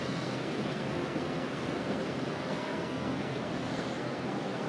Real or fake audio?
fake